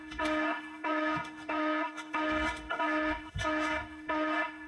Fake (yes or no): yes